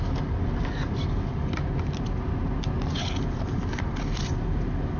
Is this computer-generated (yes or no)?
no